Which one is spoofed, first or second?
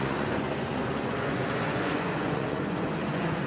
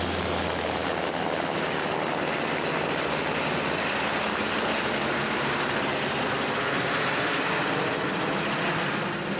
first